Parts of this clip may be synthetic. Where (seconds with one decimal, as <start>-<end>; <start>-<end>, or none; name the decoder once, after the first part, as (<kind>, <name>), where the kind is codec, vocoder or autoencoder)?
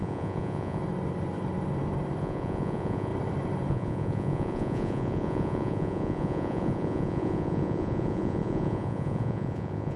0.0-0.8 (vocoder, Vocos); 2.2-3.1; 3.7-10.0